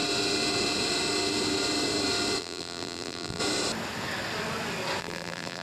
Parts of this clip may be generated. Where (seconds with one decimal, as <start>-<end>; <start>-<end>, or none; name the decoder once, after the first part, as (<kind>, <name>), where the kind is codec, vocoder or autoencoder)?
2.4-3.4 (vocoder, BigVGAN v2); 5.0-5.6